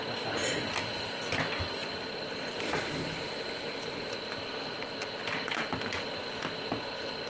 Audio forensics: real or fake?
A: real